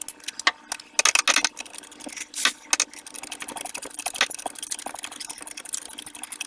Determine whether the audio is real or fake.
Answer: real